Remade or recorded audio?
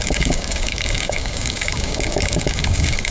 remade